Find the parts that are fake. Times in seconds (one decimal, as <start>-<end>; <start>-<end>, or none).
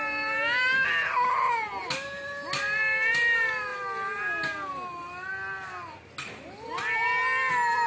none